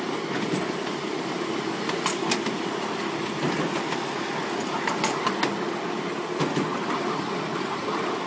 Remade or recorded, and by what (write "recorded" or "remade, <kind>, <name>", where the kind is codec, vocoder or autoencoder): recorded